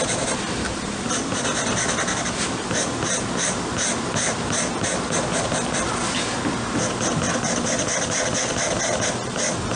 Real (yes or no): no